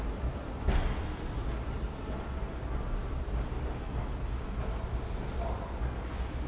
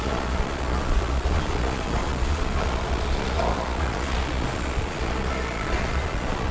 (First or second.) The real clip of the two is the first